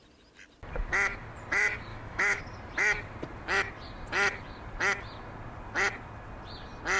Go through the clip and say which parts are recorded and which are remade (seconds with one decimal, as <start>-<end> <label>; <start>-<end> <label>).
0.0-1.9 recorded; 1.9-2.4 remade; 2.4-7.0 recorded

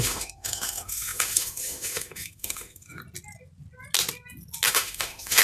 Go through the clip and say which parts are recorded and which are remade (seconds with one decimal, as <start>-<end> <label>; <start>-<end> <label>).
0.0-3.0 remade; 3.0-4.7 recorded; 4.7-5.4 remade

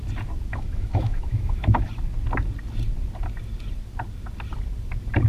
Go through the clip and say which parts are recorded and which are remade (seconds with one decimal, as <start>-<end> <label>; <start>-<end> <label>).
0.0-0.5 recorded; 0.5-1.9 remade; 1.9-5.3 recorded

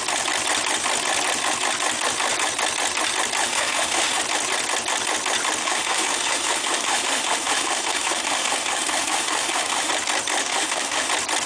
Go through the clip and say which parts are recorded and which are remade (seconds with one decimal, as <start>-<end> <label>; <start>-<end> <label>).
0.0-3.4 recorded; 3.4-4.2 remade; 4.2-5.6 recorded; 5.6-9.9 remade; 9.9-10.4 recorded; 10.4-11.1 remade; 11.1-11.5 recorded

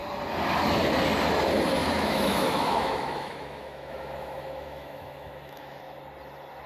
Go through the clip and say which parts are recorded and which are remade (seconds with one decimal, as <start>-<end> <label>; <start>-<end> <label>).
0.0-1.8 recorded; 1.8-5.8 remade; 5.8-6.7 recorded